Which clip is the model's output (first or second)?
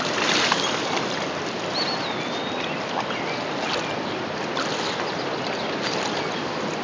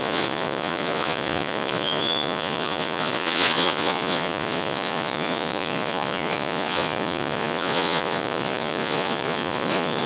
second